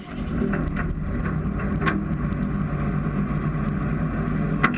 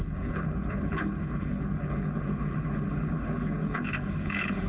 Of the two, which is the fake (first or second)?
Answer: second